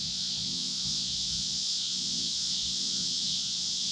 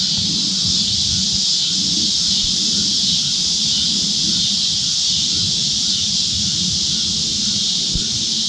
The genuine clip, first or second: second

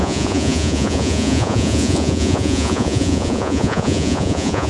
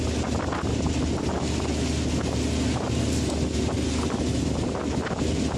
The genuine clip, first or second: second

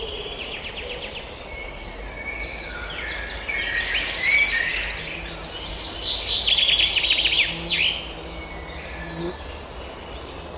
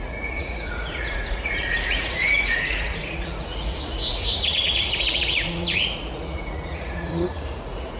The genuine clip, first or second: first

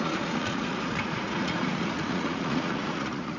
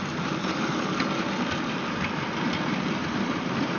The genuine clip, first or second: second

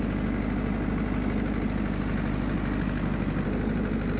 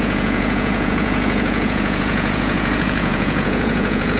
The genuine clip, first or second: first